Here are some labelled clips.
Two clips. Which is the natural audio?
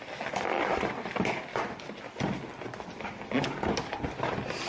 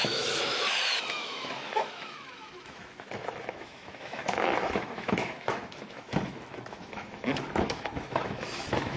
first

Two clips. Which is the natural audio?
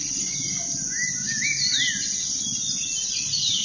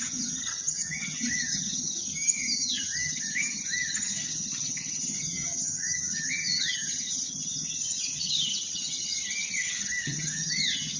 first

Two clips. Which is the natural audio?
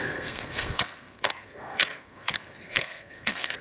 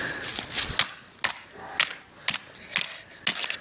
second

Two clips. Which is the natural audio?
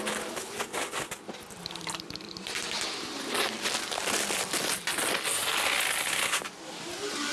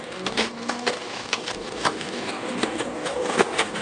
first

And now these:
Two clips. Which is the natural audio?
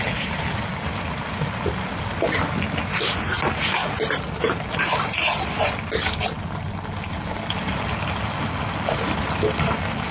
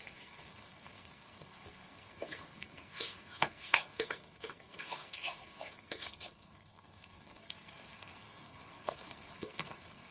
first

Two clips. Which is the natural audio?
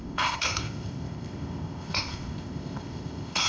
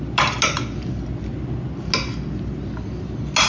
second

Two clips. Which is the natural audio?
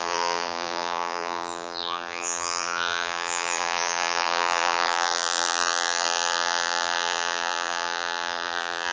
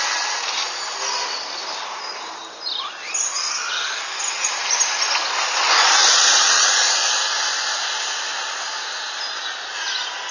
second